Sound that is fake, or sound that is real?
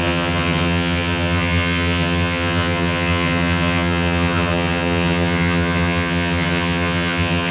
fake